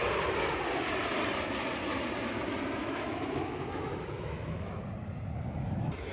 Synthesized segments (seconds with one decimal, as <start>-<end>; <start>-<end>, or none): 2.8-4.7